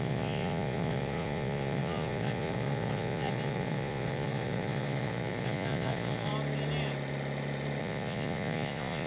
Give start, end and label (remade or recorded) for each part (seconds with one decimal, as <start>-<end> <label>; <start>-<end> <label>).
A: 0.0-6.3 remade; 6.3-7.8 recorded; 7.8-9.1 remade